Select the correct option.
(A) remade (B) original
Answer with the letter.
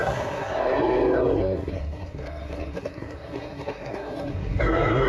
A